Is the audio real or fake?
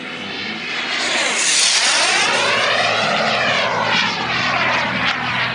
real